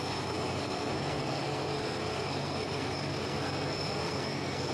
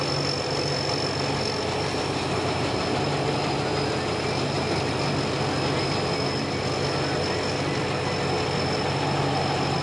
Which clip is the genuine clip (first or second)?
second